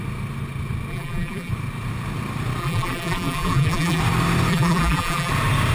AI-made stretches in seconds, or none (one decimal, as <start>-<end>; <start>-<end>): 0.9-1.5; 2.6-4.0; 4.5-5.3